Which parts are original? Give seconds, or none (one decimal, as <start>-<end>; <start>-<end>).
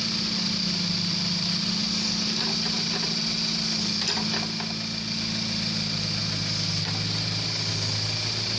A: 0.0-8.6